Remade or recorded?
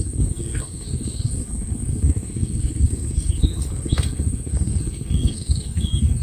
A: remade